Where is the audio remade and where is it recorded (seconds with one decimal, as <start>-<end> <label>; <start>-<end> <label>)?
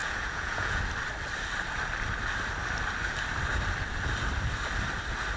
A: 0.0-0.8 remade; 0.8-5.4 recorded